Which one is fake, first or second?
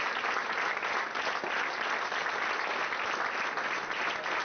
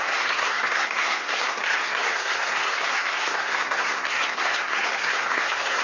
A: second